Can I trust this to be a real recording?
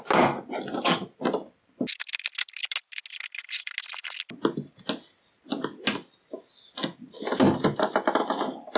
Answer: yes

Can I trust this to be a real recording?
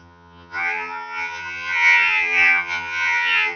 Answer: no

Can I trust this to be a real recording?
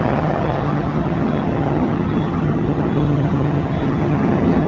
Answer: no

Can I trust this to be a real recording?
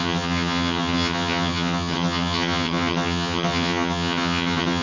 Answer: no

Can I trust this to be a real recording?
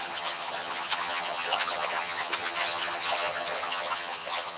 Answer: no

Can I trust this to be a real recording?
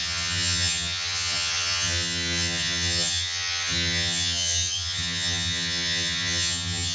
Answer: no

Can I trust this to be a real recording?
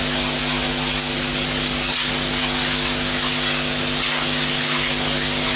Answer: yes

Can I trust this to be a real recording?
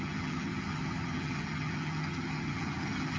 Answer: no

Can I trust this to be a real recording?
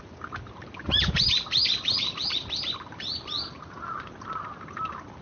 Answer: yes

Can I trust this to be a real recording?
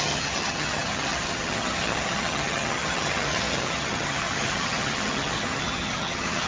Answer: no